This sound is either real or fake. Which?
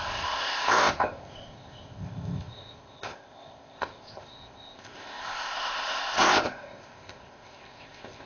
fake